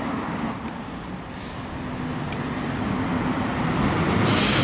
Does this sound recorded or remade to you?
recorded